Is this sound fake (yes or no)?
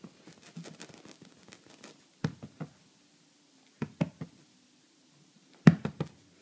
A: no